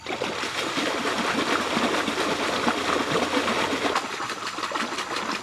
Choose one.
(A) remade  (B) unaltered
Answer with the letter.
B